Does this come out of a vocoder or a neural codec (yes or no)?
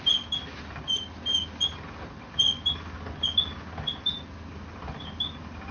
no